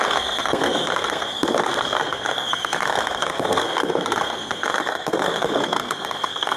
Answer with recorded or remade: remade